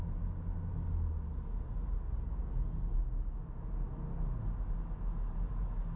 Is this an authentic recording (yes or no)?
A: yes